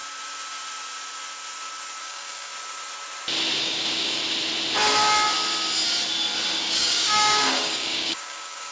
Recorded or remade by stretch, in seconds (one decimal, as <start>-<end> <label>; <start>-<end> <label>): 0.0-2.0 recorded; 2.0-2.5 remade; 2.5-3.6 recorded; 3.6-4.2 remade; 4.2-6.6 recorded; 6.6-8.7 remade